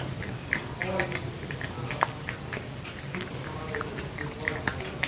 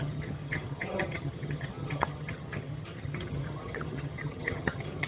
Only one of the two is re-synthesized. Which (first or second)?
second